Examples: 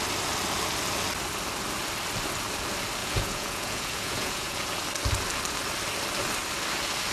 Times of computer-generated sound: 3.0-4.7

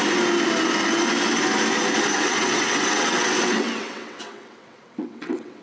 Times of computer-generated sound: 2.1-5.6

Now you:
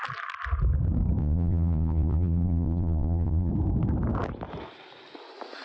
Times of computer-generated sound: 1.2-3.5